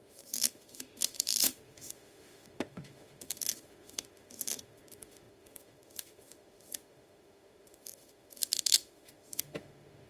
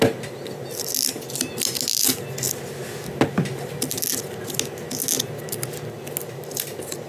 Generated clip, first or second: first